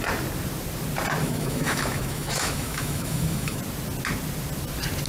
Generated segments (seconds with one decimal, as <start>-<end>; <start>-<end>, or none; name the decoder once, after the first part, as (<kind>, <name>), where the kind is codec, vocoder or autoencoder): 1.2-3.6 (autoencoder, DAC-VAE)

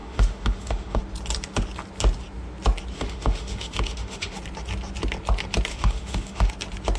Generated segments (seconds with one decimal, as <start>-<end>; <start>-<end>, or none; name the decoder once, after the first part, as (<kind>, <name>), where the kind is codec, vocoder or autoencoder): 0.0-1.0 (autoencoder, DAC-VAE); 2.9-4.4; 5.7-6.5

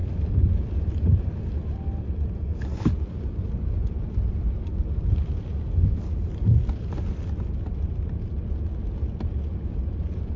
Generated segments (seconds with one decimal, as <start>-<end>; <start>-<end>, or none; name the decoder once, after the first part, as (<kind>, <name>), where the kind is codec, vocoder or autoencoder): 0.0-1.4 (vocoder, BigVGAN v2); 6.5-8.3

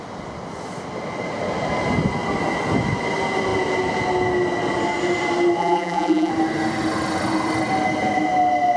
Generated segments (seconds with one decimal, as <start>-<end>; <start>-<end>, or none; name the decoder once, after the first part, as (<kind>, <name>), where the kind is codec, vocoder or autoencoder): 5.6-6.3 (vocoder, BigVGAN v2)

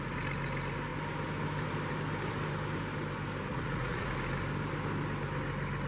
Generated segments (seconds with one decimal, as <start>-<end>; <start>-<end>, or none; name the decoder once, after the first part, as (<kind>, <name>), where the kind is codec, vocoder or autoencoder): 3.5-4.1 (vocoder, Vocos)

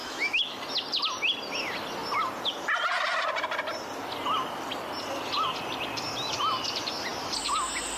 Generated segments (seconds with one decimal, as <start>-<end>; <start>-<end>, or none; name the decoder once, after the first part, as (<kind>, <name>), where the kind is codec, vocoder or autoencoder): 0.0-0.6 (autoencoder, DAC-VAE)

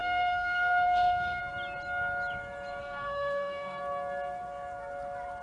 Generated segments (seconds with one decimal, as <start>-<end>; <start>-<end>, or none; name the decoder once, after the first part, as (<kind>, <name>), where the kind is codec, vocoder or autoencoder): 0.0-1.4 (codec, SNAC); 2.8-3.8